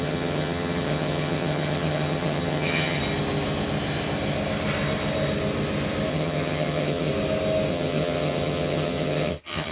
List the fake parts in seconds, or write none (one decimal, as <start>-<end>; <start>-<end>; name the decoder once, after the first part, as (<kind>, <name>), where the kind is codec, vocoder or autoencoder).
0.0-3.0 (vocoder, HiFi-GAN); 6.1-7.1; 7.7-9.7